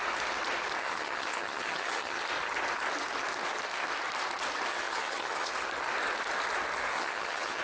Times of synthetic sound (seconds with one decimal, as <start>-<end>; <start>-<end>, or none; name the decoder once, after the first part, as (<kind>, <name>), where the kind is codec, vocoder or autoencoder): 0.8-2.2 (vocoder, HiFi-GAN); 4.7-5.5; 6.9-7.6